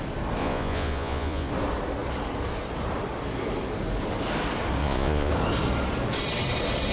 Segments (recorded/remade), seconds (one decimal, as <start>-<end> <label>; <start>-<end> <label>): 0.0-0.4 recorded; 0.4-1.5 remade; 1.5-4.8 recorded; 4.8-5.3 remade; 5.3-6.9 recorded